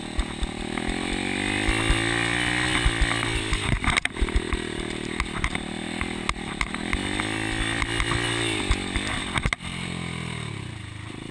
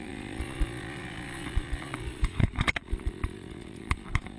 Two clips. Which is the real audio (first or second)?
first